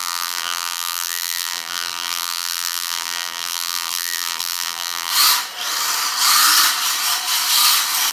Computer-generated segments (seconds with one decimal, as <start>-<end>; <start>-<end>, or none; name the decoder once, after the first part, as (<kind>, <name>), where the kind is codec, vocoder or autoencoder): 0.0-5.1 (vocoder, BigVGAN v2)

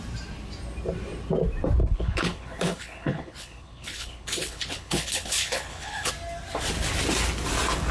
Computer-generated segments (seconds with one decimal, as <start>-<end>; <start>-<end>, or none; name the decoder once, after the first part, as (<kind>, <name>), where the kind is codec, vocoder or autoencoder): 1.8-6.1 (codec, HILCodec)